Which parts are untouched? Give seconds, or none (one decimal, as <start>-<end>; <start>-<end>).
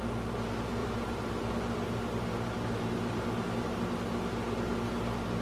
0.0-0.8; 3.3-5.4